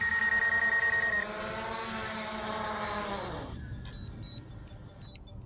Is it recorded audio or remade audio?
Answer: recorded